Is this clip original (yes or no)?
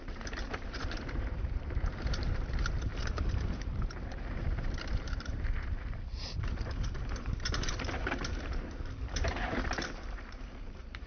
no